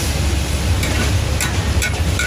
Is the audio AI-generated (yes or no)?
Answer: no